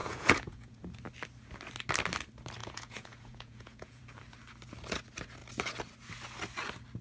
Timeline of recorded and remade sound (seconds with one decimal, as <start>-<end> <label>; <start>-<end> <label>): 0.0-0.8 remade; 0.8-2.6 recorded; 2.6-4.0 remade; 4.0-7.0 recorded